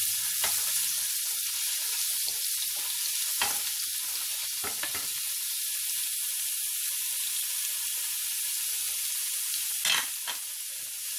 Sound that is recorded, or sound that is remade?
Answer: recorded